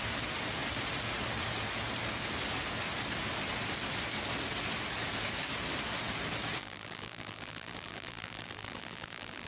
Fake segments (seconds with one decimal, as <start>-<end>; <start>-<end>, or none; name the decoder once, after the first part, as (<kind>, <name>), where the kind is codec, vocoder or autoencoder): 6.6-9.5 (vocoder, BigVGAN v2)